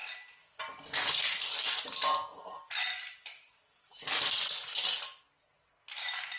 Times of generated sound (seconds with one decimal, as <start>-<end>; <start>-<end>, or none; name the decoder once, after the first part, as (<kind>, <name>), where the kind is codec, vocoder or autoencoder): none